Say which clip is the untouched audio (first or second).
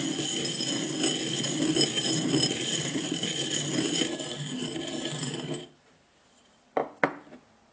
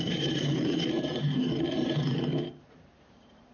first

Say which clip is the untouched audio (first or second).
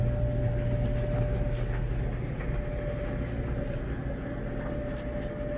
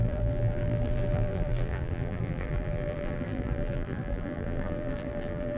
first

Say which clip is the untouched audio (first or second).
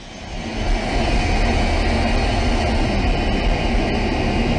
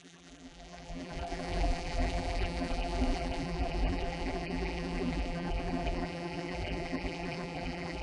first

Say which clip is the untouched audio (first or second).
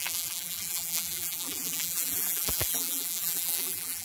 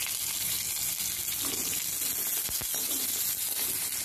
second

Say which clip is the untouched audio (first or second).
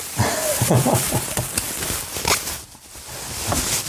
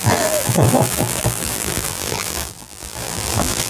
first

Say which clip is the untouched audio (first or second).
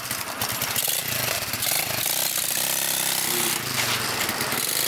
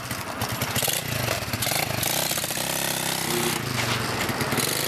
second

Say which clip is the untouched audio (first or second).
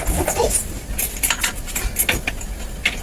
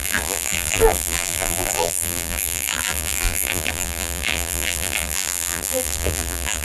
first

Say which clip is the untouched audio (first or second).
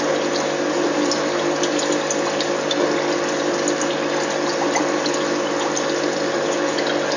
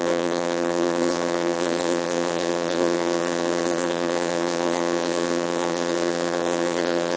first